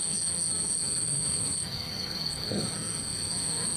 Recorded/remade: remade